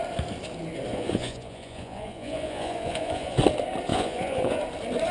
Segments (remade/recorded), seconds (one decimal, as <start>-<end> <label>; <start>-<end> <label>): 0.0-0.9 recorded; 0.9-3.4 remade; 3.4-3.9 recorded; 3.9-4.6 remade; 4.6-5.1 recorded

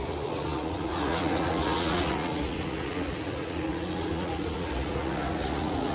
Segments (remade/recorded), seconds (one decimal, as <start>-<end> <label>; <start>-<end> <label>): 0.0-5.9 remade